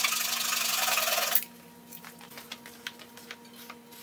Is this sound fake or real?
real